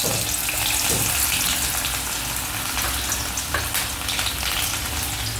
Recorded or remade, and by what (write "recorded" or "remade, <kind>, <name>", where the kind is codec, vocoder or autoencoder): recorded